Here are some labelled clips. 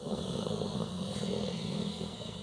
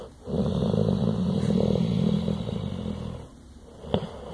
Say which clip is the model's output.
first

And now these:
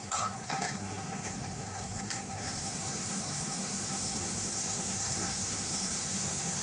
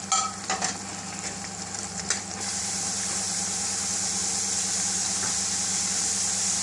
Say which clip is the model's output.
first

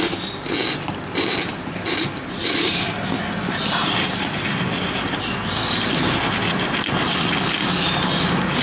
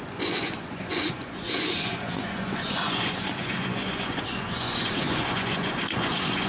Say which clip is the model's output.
second